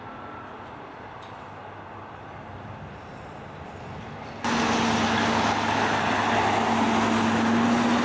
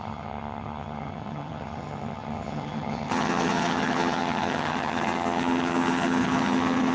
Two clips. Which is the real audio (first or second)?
first